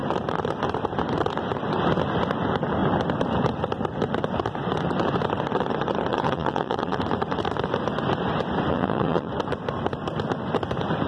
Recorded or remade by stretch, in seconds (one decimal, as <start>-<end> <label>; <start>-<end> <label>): 0.0-6.1 recorded; 6.1-7.0 remade; 7.0-8.7 recorded; 8.7-9.3 remade; 9.3-11.1 recorded